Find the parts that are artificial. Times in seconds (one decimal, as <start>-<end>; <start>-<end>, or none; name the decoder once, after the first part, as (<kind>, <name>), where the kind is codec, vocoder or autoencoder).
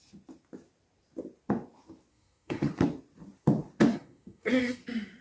2.1-2.7 (codec, SNAC); 3.9-4.8